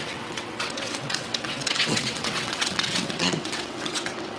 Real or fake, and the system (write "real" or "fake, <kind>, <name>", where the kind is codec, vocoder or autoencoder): fake, vocoder, WaveNeXt